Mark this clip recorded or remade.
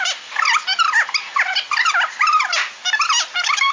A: recorded